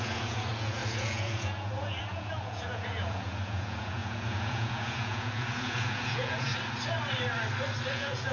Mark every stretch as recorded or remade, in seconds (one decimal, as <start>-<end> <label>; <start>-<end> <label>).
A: 0.0-6.5 remade; 6.5-7.9 recorded; 7.9-8.3 remade